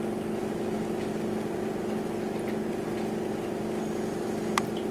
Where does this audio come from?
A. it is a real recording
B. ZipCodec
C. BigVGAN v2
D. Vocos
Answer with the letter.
A